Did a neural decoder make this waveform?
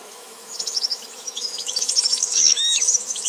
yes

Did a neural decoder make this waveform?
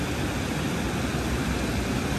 no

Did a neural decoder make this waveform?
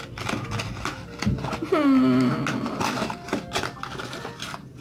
no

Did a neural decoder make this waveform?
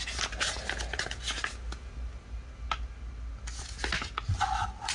no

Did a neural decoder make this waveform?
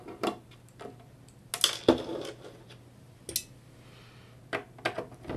no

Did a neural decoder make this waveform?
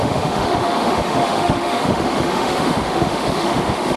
yes